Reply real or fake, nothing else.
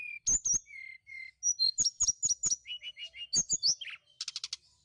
real